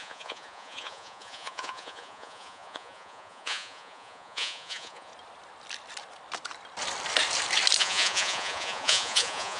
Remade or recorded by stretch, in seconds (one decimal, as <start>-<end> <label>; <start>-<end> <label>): 0.0-5.1 remade; 5.1-7.8 recorded; 7.8-9.6 remade